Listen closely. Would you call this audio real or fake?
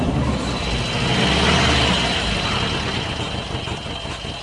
real